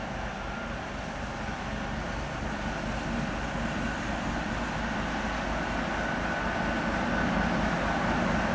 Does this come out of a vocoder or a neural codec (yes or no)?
no